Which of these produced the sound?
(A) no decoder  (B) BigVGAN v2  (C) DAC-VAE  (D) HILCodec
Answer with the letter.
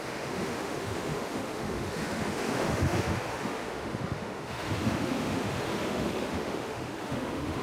C